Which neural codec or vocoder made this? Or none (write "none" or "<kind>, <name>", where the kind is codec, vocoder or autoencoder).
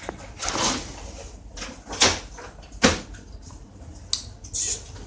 none